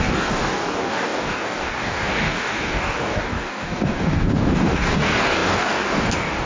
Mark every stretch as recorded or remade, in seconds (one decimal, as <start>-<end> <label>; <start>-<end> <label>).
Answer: 0.0-6.5 remade